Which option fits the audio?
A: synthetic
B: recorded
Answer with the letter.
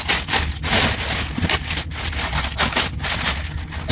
B